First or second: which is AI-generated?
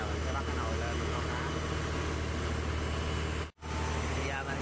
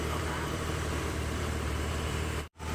second